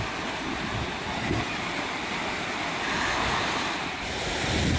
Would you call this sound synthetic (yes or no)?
no